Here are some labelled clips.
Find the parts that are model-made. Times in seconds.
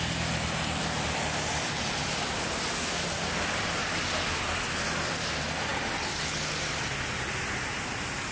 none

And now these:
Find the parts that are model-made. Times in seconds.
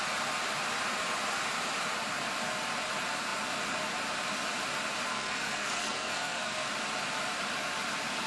5.1-6.7 (codec, SNAC)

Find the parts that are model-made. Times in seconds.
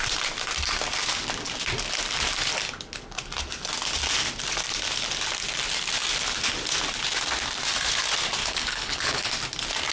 8.4-9.3 (codec, HILCodec)